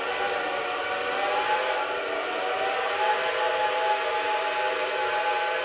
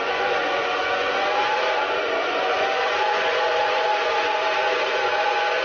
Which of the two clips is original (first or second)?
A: first